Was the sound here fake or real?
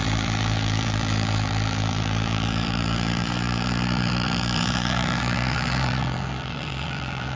fake